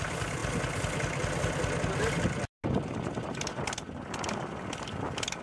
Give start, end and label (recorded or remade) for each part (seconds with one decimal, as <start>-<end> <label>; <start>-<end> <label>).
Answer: 0.0-5.4 recorded